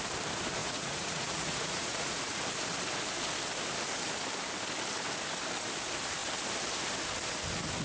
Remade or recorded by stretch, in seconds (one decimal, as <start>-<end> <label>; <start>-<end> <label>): 0.0-0.6 recorded; 0.6-2.4 remade; 2.4-7.8 recorded